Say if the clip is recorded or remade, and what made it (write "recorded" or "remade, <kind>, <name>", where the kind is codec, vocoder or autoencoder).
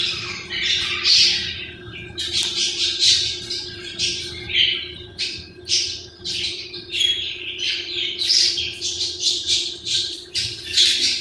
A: recorded